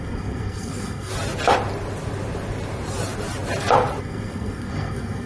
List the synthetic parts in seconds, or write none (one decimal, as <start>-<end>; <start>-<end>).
0.0-1.1; 4.0-5.3